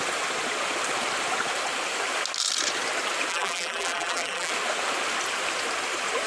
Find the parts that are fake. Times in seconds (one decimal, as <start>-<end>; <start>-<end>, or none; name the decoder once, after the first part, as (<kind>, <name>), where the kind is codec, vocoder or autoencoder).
3.3-4.5 (vocoder, BigVGAN v2)